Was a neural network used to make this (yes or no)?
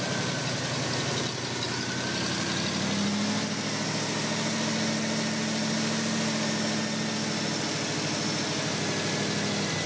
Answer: no